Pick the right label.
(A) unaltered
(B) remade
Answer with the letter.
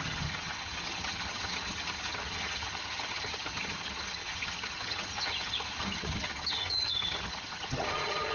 B